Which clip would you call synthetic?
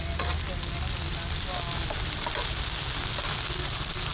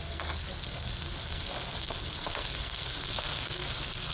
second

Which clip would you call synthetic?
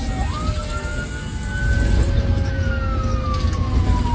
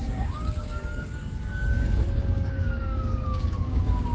second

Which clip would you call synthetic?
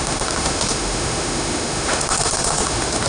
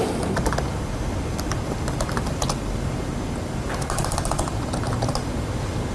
first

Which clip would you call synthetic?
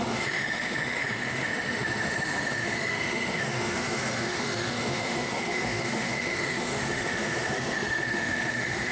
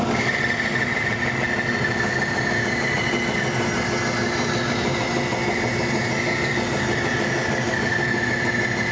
first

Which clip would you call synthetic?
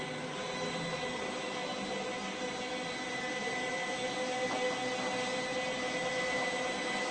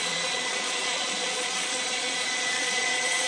second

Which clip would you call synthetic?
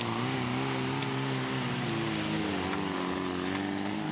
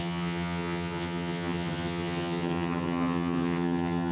second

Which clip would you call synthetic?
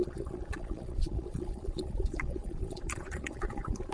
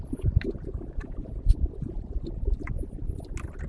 first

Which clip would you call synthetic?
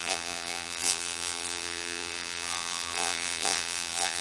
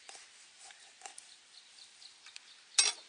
first